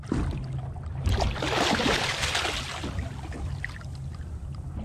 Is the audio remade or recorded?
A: recorded